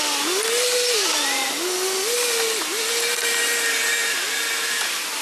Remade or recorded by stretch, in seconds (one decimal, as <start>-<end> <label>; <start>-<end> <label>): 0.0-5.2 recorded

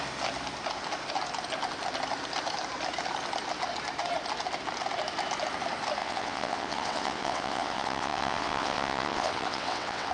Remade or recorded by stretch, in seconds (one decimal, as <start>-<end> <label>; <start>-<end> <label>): 0.0-6.0 recorded; 6.0-10.1 remade

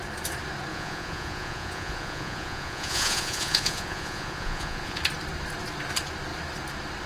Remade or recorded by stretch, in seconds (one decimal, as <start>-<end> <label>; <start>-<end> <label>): 0.0-0.7 recorded; 0.7-5.0 remade; 5.0-7.1 recorded

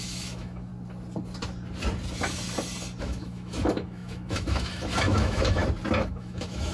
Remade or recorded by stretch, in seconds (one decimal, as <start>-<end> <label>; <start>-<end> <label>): 0.0-0.7 remade; 0.7-3.0 recorded; 3.0-5.6 remade; 5.6-6.1 recorded; 6.1-6.7 remade

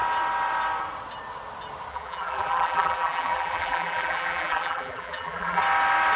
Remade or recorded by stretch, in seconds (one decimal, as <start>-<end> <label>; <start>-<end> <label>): 0.0-1.9 recorded; 1.9-5.6 remade; 5.6-6.2 recorded

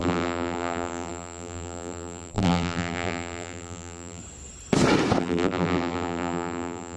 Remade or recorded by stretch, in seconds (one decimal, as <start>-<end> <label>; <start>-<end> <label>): 0.0-4.2 remade; 4.2-5.2 recorded; 5.2-7.0 remade

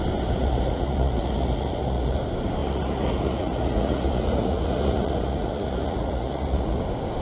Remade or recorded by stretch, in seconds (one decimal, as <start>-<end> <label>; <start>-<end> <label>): 0.0-0.4 recorded; 0.4-2.2 remade; 2.2-2.6 recorded; 2.6-6.8 remade; 6.8-7.2 recorded

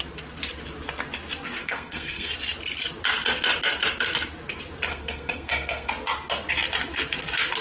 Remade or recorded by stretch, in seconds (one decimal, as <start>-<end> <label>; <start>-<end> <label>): 0.0-1.6 recorded; 1.6-2.3 remade; 2.3-4.9 recorded; 4.9-5.9 remade; 5.9-7.6 recorded